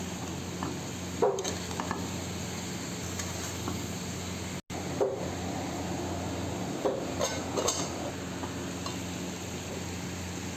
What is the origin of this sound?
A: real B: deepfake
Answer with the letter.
A